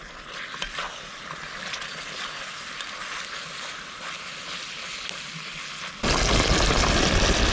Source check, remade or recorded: recorded